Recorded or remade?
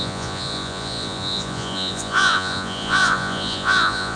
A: remade